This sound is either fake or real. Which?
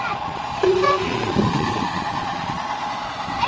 fake